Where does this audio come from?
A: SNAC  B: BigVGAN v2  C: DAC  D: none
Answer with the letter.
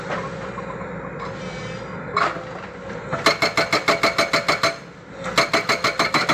D